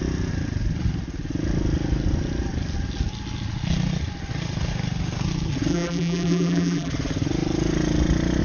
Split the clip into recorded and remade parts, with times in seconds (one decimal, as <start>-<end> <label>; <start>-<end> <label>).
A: 0.0-5.7 recorded; 5.7-6.9 remade; 6.9-8.4 recorded